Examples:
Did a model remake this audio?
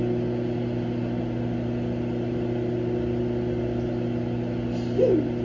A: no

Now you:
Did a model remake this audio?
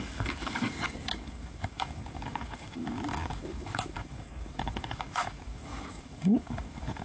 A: yes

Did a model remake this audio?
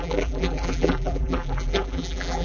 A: yes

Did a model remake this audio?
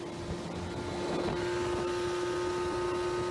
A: no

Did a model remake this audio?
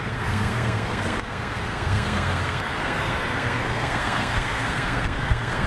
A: yes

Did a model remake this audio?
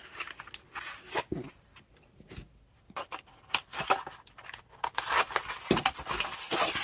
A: no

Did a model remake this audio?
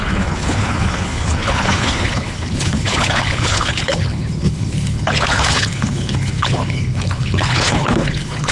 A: yes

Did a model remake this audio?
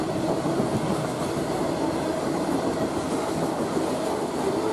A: no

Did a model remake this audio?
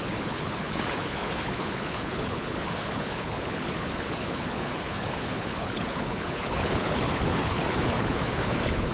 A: yes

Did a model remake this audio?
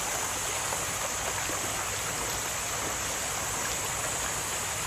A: no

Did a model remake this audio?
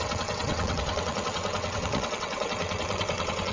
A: yes